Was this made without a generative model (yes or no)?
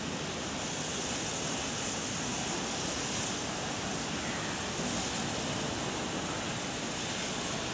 yes